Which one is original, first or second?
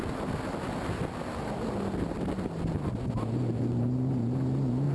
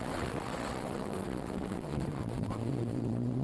first